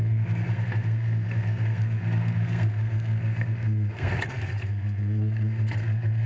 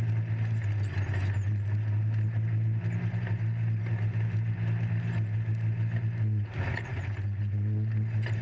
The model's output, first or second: first